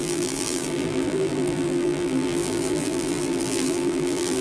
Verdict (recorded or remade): remade